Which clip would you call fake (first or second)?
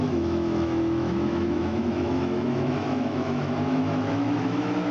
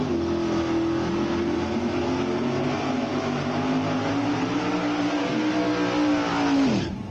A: first